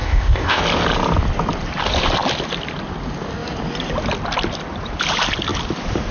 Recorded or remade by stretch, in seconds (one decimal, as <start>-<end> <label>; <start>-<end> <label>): 0.0-0.6 remade; 0.6-6.1 recorded